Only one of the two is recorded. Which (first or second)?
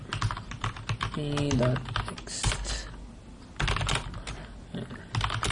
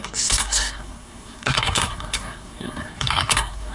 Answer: first